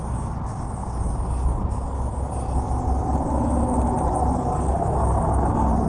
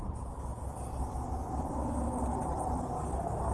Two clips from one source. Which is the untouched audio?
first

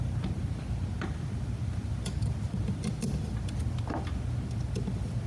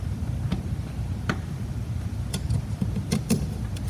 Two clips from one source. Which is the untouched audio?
first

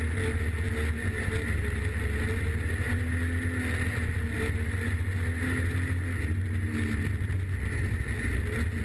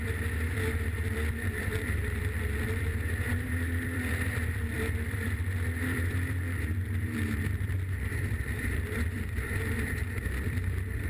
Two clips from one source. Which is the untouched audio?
first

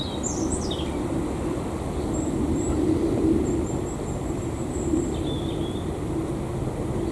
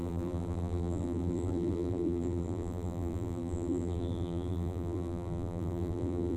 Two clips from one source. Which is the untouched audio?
first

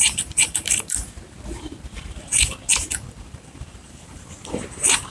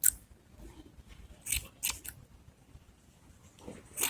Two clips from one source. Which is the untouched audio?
second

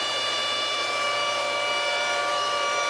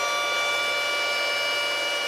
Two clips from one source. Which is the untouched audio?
second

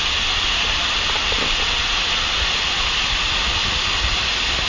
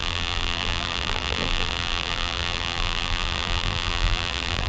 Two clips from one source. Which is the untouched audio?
first